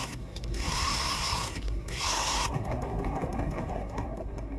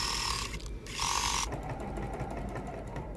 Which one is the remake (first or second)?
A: first